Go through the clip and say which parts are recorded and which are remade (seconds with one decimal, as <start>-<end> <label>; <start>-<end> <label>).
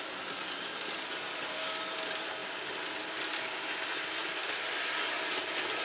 0.0-5.8 recorded